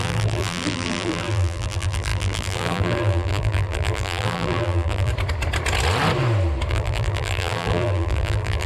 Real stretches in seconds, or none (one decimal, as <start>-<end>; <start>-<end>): 5.1-6.7